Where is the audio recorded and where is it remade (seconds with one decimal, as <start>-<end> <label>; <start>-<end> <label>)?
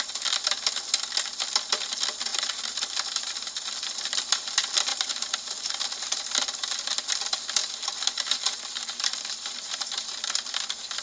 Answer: 0.0-2.3 recorded; 2.3-4.3 remade; 4.3-4.9 recorded; 4.9-5.7 remade; 5.7-7.6 recorded; 7.6-10.4 remade; 10.4-11.0 recorded